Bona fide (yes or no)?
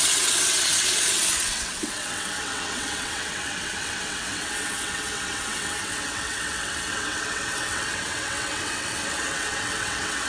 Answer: no